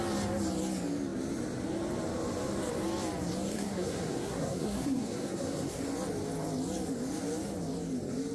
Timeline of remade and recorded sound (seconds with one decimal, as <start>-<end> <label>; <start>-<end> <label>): 0.0-3.5 recorded; 3.5-5.8 remade; 5.8-8.3 recorded